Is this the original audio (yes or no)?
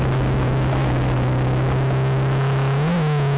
yes